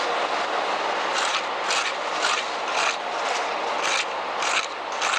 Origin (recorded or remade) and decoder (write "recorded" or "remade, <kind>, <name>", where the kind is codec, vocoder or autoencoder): recorded